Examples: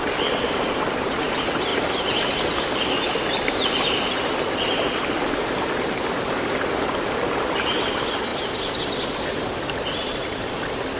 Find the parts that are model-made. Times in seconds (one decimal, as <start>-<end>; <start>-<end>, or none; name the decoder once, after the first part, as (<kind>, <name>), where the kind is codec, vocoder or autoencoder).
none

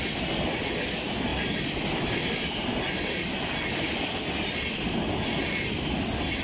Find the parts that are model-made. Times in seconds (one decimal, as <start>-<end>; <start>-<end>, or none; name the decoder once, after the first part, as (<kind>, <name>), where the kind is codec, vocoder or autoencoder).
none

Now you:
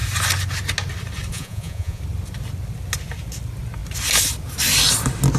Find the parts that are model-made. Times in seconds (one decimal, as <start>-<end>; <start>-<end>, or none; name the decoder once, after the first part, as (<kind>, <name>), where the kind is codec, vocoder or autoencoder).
1.3-2.0 (vocoder, Vocos)

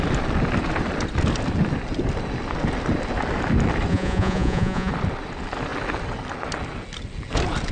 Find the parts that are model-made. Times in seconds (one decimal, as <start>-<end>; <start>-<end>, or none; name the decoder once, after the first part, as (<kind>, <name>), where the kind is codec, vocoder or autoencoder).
3.9-4.9 (vocoder, Vocos)